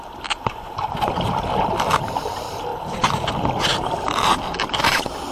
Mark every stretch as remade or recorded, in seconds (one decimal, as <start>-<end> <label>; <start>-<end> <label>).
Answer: 0.0-2.7 remade; 2.7-3.3 recorded; 3.3-5.3 remade